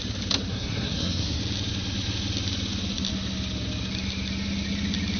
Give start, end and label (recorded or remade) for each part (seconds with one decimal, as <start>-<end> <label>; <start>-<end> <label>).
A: 0.0-0.5 recorded; 0.5-1.4 remade; 1.4-5.2 recorded